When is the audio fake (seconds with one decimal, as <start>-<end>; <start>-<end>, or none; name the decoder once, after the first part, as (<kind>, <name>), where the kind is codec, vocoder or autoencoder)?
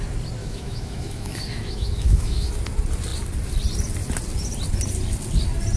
0.4-2.5 (autoencoder, DAC-VAE)